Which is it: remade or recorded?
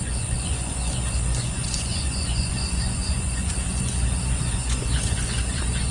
remade